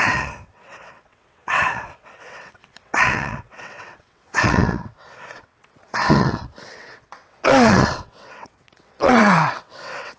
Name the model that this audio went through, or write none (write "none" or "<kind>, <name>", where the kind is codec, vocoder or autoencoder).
vocoder, WaveNeXt